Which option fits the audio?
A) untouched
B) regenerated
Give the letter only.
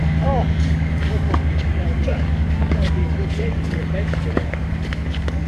B